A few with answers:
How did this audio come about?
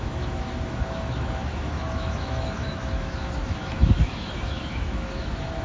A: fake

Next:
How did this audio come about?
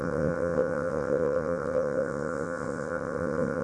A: fake